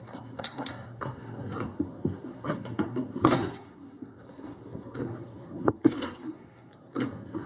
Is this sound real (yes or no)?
no